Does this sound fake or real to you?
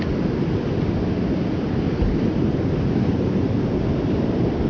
real